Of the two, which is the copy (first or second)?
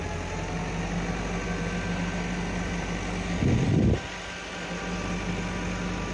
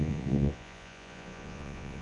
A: second